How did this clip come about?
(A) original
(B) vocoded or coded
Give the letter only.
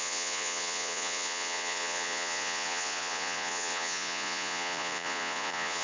B